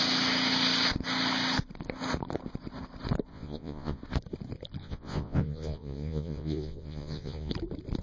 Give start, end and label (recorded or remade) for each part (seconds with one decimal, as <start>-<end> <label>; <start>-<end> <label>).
0.0-3.3 recorded; 3.3-4.0 remade; 4.0-4.8 recorded; 4.8-7.5 remade; 7.5-8.0 recorded